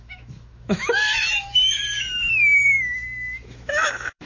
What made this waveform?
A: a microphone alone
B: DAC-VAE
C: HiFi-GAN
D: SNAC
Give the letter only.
B